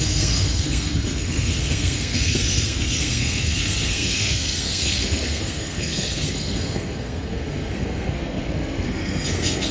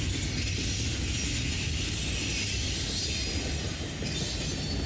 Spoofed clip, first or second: first